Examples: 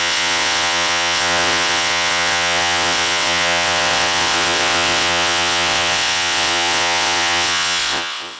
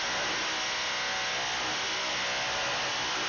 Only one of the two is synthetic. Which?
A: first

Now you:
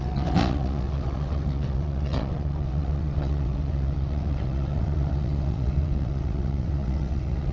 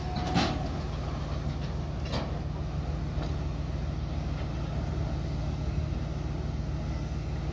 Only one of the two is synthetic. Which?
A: first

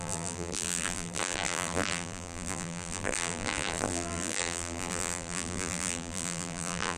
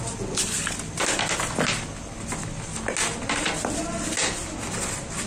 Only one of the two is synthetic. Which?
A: first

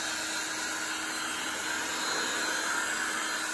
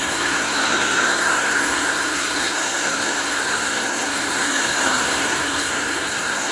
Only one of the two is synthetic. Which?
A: second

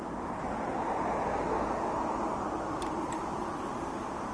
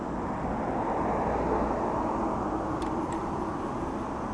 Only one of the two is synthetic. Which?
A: first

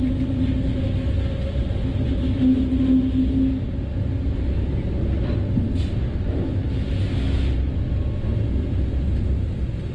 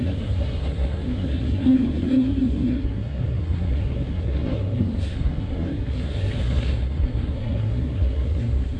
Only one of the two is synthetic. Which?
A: second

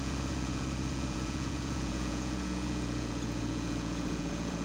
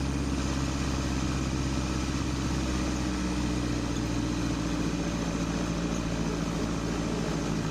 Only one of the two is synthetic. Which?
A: first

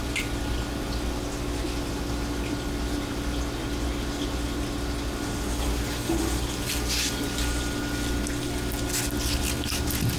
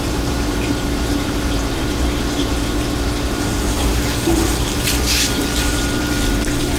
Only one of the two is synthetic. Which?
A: second